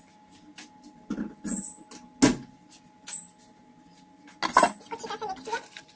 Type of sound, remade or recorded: recorded